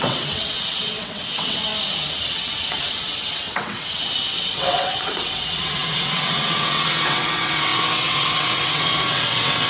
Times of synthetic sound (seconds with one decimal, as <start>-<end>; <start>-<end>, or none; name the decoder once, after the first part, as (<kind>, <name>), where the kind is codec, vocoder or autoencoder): 0.0-1.7 (vocoder, WaveNeXt); 2.3-9.7